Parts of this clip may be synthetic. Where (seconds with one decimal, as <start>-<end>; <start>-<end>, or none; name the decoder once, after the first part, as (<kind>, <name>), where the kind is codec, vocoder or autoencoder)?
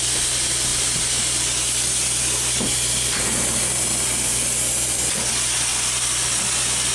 4.3-5.3 (vocoder, BigVGAN v2); 5.7-6.4